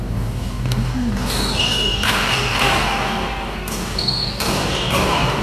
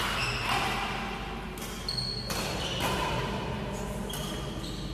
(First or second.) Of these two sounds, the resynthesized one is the first